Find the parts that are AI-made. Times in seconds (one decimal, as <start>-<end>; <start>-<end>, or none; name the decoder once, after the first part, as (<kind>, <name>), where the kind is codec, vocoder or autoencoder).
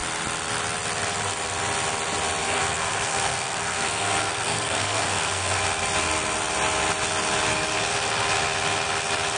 2.4-5.6 (codec, SNAC)